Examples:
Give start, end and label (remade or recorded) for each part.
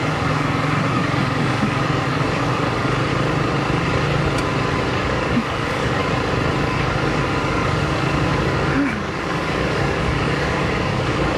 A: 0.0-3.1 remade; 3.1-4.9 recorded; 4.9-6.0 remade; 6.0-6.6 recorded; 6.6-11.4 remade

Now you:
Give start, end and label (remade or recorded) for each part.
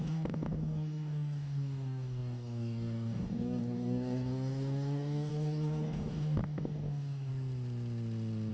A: 0.0-7.3 remade; 7.3-8.5 recorded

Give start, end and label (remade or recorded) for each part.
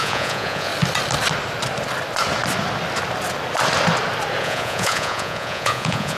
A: 0.0-0.7 remade; 0.7-4.4 recorded; 4.4-6.2 remade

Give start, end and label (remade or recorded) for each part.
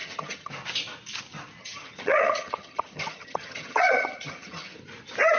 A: 0.0-0.5 remade; 0.5-1.6 recorded; 1.6-4.8 remade; 4.8-5.4 recorded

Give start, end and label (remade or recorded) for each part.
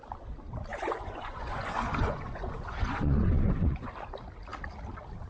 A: 0.0-0.7 recorded; 0.7-3.9 remade; 3.9-5.3 recorded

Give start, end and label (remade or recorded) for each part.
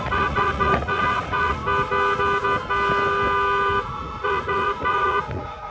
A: 0.0-1.6 remade; 1.6-3.8 recorded; 3.8-5.7 remade